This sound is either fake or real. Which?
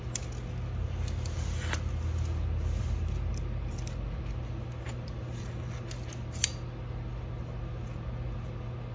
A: real